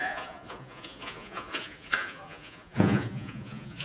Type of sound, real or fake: fake